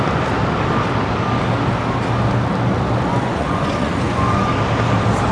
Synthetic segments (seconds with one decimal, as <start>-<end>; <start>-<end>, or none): 3.1-4.5